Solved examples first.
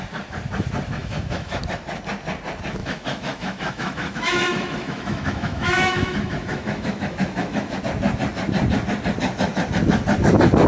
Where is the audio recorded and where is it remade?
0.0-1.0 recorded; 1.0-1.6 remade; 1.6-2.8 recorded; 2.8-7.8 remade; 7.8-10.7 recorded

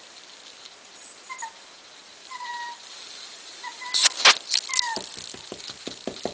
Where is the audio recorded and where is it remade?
0.0-2.2 recorded; 2.2-3.0 remade; 3.0-6.3 recorded

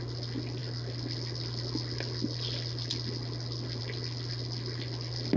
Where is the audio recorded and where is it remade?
0.0-5.4 recorded

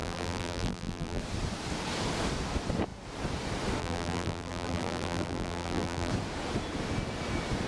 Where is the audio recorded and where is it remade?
0.0-1.2 remade; 1.2-3.8 recorded; 3.8-6.1 remade; 6.1-7.7 recorded

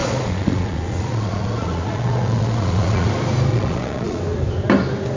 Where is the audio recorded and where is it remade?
0.0-3.1 remade; 3.1-3.5 recorded; 3.5-4.2 remade; 4.2-5.2 recorded

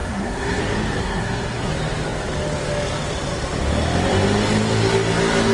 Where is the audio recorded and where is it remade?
0.0-0.6 remade; 0.6-1.0 recorded; 1.0-1.7 remade; 1.7-5.5 recorded

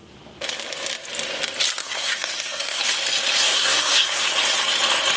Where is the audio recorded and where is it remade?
0.0-1.8 recorded; 1.8-2.8 remade; 2.8-3.4 recorded; 3.4-4.3 remade; 4.3-5.2 recorded